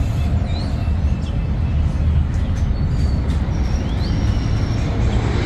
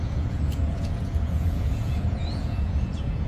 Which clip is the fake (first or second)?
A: second